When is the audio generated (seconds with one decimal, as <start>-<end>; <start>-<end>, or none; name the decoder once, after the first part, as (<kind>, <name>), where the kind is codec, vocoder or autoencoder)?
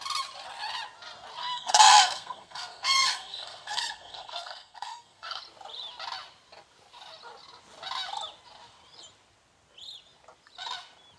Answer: 1.4-5.4 (codec, SNAC)